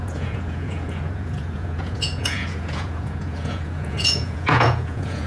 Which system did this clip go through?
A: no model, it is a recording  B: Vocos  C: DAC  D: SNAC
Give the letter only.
B